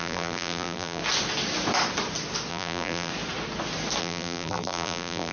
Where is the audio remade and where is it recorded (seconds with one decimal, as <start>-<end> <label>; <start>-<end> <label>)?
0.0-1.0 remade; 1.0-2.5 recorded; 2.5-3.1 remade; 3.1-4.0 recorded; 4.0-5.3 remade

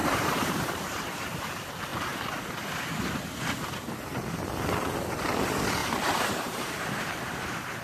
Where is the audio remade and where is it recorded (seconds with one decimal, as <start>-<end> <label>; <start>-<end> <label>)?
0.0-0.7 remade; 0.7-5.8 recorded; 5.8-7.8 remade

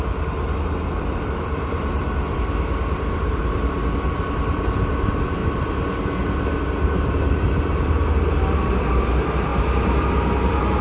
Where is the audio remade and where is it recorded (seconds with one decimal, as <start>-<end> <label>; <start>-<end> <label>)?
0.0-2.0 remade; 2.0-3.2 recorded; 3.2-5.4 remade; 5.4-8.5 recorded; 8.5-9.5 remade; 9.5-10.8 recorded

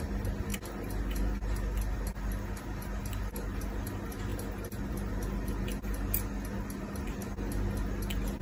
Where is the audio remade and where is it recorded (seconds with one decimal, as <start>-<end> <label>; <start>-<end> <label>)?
0.0-8.4 recorded

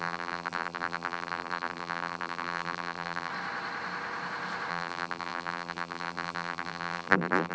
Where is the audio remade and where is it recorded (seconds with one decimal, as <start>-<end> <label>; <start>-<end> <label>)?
0.0-3.3 remade; 3.3-4.7 recorded; 4.7-7.5 remade

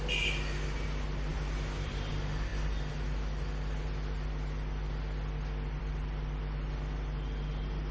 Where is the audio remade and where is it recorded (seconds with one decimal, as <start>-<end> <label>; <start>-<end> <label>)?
0.0-1.3 recorded; 1.3-2.1 remade; 2.1-7.9 recorded